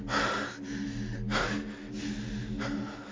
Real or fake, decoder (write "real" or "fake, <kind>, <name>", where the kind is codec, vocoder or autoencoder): real